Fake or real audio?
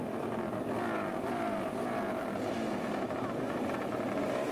real